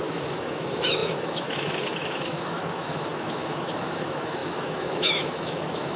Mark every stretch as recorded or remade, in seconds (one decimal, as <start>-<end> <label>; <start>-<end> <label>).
0.0-6.0 remade